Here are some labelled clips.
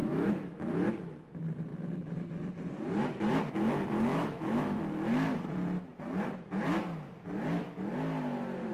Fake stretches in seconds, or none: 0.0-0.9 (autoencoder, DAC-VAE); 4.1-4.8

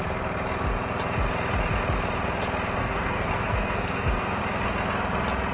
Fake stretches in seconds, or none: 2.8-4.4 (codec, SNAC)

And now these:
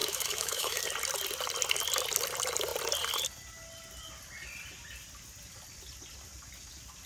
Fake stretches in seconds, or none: 0.0-0.8 (autoencoder, DAC-VAE)

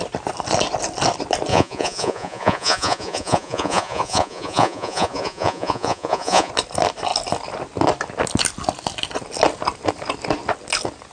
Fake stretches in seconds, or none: 1.5-6.5 (vocoder, Vocos)